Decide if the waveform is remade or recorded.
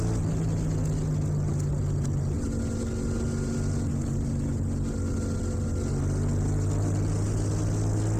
recorded